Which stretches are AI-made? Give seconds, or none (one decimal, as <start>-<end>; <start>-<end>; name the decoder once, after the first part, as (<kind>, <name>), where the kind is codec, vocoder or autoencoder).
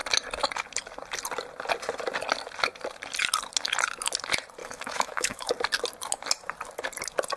4.6-5.5 (autoencoder, DAC-VAE)